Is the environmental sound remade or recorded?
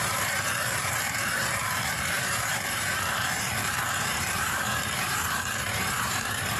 remade